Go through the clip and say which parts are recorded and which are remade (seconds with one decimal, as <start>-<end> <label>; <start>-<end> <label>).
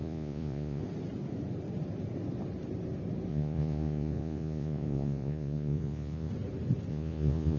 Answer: 0.0-0.8 remade; 0.8-3.3 recorded; 3.3-6.3 remade; 6.3-6.9 recorded; 6.9-7.6 remade